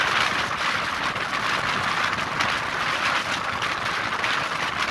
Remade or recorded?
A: recorded